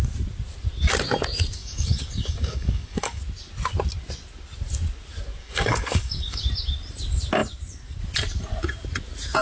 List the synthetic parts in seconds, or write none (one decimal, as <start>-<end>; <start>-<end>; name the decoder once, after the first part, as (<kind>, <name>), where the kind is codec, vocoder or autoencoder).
1.6-3.2 (codec, DAC); 5.4-6.4